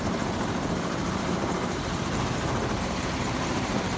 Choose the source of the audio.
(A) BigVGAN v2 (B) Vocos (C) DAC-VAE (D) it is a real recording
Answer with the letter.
A